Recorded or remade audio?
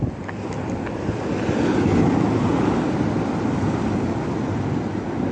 recorded